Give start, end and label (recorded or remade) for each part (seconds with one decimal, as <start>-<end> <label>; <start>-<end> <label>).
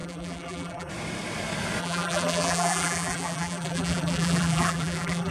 0.0-0.9 remade; 0.9-1.8 recorded; 1.8-5.3 remade